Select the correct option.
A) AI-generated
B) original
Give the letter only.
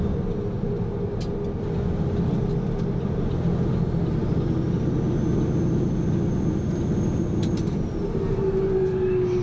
B